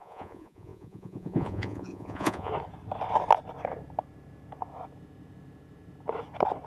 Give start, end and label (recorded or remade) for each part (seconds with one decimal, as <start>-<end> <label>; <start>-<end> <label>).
0.0-2.5 remade; 2.5-6.7 recorded